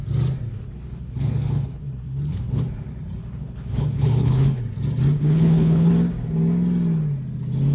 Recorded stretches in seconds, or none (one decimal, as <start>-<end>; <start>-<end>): 0.0-0.5; 2.6-3.2; 4.6-5.2; 5.9-7.7